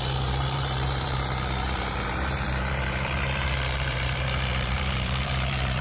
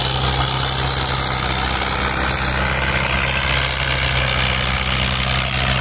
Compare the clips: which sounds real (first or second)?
second